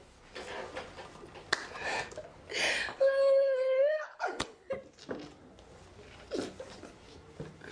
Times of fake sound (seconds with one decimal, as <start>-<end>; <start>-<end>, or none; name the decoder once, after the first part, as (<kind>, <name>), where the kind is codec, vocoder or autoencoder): 2.9-4.7 (codec, HILCodec)